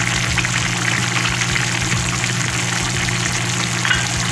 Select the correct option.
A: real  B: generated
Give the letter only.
A